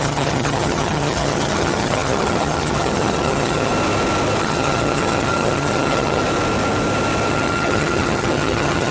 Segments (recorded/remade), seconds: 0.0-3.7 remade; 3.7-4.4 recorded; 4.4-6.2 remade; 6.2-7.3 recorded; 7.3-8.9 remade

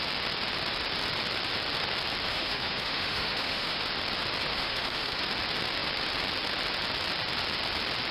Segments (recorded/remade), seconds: 0.0-2.3 recorded; 2.3-3.8 remade; 3.8-4.5 recorded; 4.5-5.2 remade; 5.2-8.1 recorded

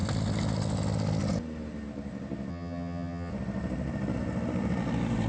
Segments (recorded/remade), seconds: 0.0-2.5 recorded; 2.5-3.3 remade; 3.3-5.3 recorded